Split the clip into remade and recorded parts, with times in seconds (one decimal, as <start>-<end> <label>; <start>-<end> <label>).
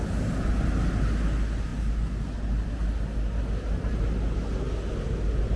0.0-5.6 recorded